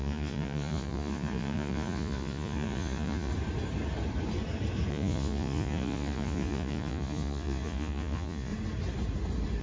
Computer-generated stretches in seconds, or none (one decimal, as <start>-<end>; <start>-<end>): 0.0-3.3; 4.9-8.5